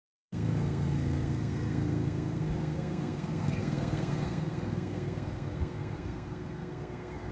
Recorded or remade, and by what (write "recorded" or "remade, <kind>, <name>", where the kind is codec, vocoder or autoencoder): remade, codec, SNAC